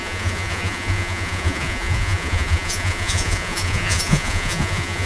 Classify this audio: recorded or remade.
remade